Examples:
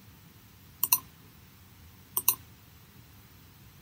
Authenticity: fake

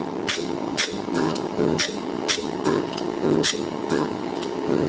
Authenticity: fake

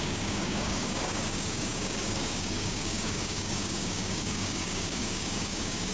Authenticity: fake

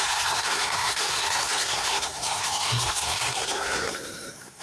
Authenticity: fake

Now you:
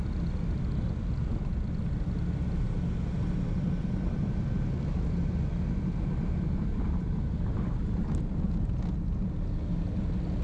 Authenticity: real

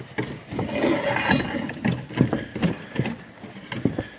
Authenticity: real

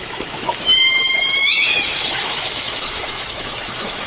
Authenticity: fake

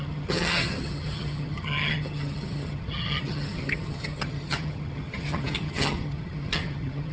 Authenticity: fake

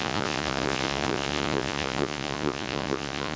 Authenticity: fake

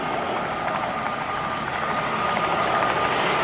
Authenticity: real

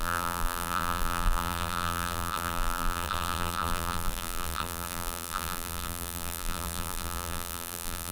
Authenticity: fake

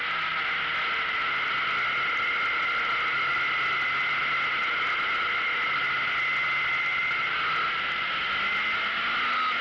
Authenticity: real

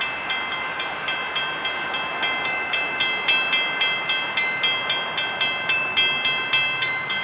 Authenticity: real